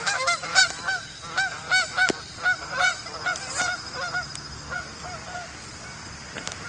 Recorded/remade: recorded